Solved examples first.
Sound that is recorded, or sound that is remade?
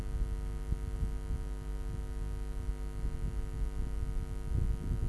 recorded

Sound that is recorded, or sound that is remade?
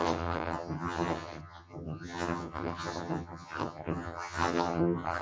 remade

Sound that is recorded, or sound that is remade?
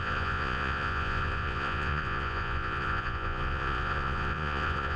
remade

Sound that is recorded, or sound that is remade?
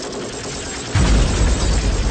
recorded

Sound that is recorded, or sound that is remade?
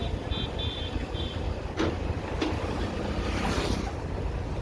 recorded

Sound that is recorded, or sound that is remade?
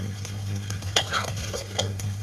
remade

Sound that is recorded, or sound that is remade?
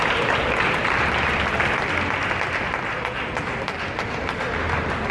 recorded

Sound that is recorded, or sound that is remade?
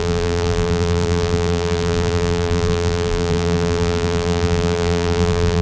remade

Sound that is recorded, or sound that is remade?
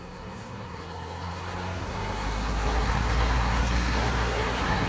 remade